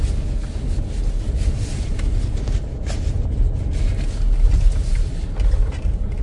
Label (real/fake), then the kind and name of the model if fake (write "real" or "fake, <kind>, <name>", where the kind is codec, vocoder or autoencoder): real